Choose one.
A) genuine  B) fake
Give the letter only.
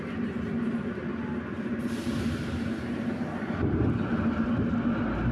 A